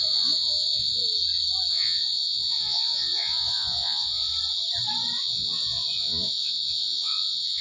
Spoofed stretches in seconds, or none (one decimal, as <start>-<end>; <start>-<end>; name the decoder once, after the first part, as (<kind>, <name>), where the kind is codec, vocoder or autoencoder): 0.0-1.0 (vocoder, Vocos); 1.7-4.3; 5.2-7.6